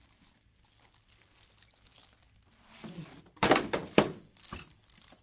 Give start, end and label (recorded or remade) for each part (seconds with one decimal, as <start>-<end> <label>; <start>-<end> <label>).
0.0-5.2 remade